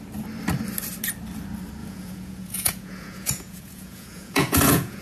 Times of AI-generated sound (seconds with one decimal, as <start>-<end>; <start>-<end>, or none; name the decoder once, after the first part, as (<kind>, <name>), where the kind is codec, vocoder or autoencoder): 1.8-5.0 (vocoder, Vocos)

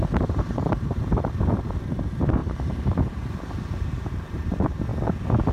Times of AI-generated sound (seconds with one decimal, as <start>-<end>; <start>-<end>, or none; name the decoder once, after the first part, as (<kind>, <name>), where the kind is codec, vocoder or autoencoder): 0.0-4.9 (vocoder, BigVGAN v2)

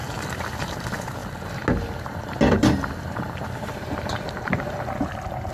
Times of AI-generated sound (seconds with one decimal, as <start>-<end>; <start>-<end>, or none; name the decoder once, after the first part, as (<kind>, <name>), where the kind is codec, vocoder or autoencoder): 0.6-1.2 (vocoder, BigVGAN v2); 3.7-5.5

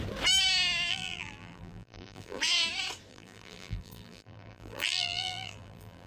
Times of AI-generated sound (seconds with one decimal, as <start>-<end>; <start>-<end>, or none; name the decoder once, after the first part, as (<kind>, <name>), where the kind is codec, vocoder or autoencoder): 0.9-2.4 (vocoder, BigVGAN v2); 3.1-6.1

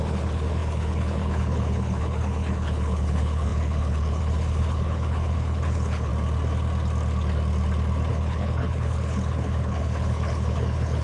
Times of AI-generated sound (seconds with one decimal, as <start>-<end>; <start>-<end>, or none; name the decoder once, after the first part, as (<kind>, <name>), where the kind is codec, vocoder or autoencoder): 0.0-6.1 (codec, HILCodec); 8.1-11.0